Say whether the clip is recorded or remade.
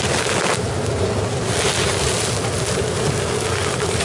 recorded